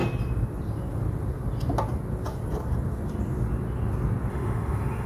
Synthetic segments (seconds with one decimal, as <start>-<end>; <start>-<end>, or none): 4.3-5.1